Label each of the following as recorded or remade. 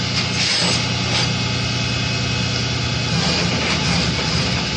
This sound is recorded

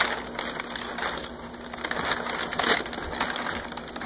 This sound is recorded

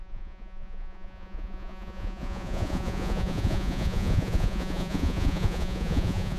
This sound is remade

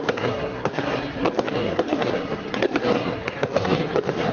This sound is remade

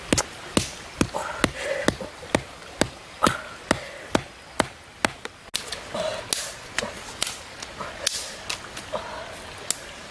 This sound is recorded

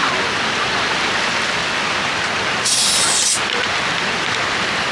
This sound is recorded